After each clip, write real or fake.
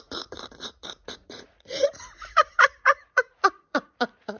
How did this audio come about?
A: fake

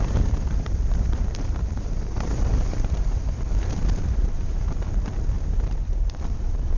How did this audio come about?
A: fake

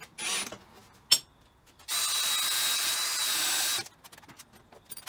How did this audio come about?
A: real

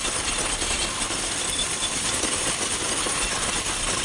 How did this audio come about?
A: real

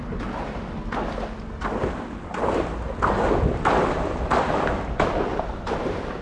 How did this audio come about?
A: real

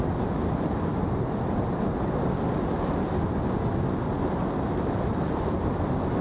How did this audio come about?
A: real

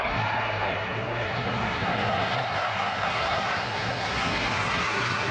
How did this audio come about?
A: fake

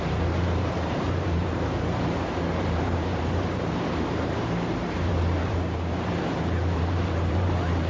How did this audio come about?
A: fake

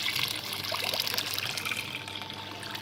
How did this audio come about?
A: real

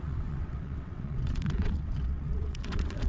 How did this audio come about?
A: fake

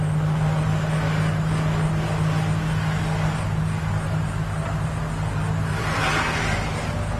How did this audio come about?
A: real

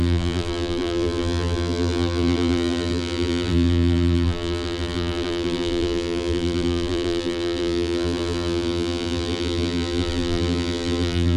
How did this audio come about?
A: fake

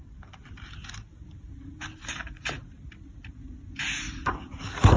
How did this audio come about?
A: real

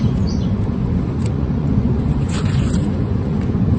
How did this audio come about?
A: fake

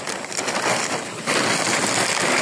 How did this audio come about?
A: real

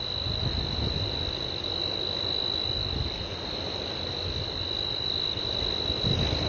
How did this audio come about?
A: real